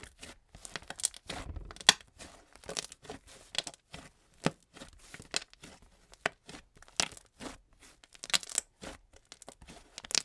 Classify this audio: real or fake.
real